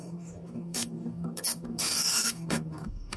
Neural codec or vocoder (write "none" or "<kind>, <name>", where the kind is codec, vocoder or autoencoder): codec, DAC